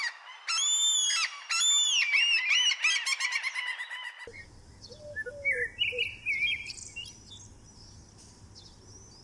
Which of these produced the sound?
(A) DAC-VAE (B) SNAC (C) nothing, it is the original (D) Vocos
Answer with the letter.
C